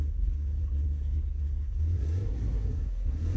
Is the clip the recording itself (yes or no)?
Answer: no